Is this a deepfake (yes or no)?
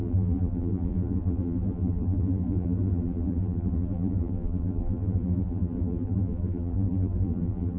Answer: yes